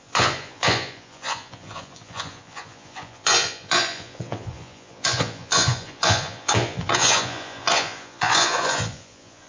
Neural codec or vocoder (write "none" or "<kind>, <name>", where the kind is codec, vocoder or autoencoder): vocoder, Vocos